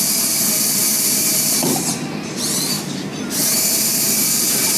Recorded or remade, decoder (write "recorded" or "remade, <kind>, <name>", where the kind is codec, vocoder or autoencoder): recorded